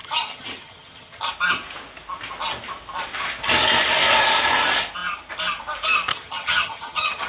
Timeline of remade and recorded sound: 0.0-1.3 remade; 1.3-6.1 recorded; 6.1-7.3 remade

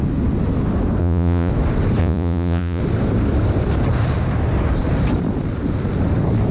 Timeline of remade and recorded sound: 0.0-1.0 recorded; 1.0-1.5 remade; 1.5-2.0 recorded; 2.0-2.8 remade; 2.8-6.5 recorded

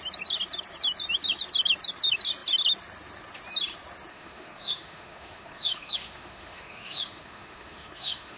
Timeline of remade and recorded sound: 0.0-4.1 recorded; 4.1-8.4 remade

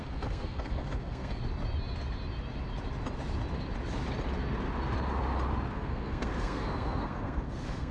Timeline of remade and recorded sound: 0.0-1.4 remade; 1.4-5.7 recorded; 5.7-7.9 remade

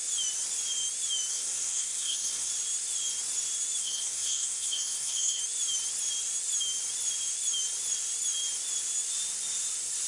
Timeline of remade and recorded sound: 0.0-1.3 recorded; 1.3-2.5 remade; 2.5-3.8 recorded; 3.8-5.4 remade; 5.4-10.1 recorded